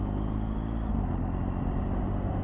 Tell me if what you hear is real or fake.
real